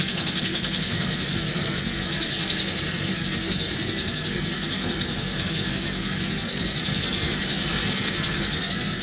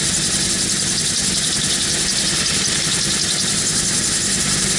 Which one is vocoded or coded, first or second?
first